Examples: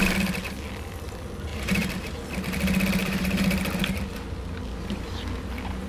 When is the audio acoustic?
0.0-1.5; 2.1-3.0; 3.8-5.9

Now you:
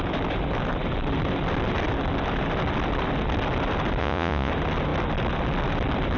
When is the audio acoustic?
0.0-4.0; 4.5-6.2

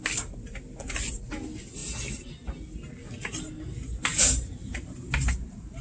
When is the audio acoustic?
0.0-4.6

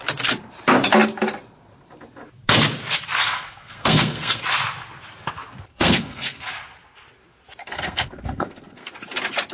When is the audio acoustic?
0.0-3.2; 4.4-5.7; 6.5-7.6; 8.9-9.5

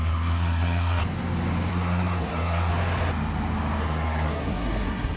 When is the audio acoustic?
1.0-1.7; 2.7-3.8

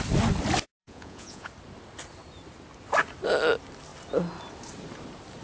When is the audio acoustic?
0.0-0.8; 1.5-5.4

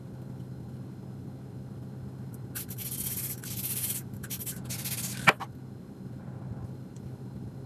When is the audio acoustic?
0.0-7.7

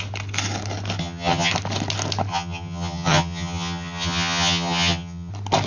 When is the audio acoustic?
0.0-1.0; 1.5-2.3; 5.3-5.7